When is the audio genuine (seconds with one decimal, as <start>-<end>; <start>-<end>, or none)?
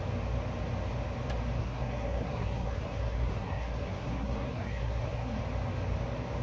0.0-1.6; 5.4-6.4